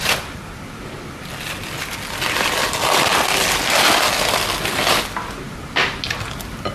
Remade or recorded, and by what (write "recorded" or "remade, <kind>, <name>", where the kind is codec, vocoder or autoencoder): recorded